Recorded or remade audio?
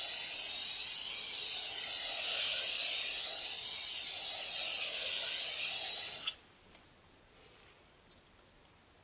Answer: recorded